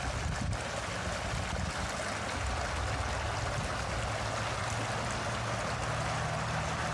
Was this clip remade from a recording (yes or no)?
no